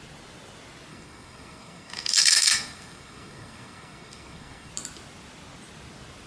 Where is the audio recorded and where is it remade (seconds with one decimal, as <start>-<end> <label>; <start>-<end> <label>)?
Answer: 0.0-0.9 recorded; 0.9-4.7 remade; 4.7-6.3 recorded